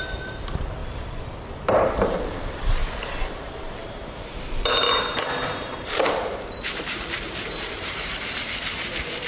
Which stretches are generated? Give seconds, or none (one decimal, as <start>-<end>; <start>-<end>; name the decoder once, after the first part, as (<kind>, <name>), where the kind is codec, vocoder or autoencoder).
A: 0.0-0.8 (vocoder, BigVGAN v2); 1.9-2.8; 3.3-9.3